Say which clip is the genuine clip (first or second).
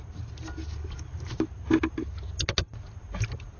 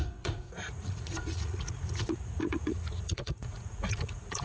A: first